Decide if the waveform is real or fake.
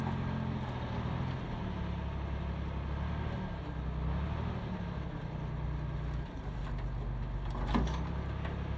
real